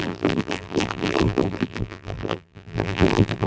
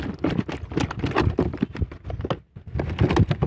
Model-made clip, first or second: first